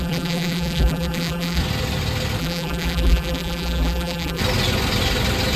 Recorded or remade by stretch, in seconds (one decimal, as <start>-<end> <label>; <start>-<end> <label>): 0.0-1.6 remade; 1.6-2.4 recorded; 2.4-4.4 remade; 4.4-5.6 recorded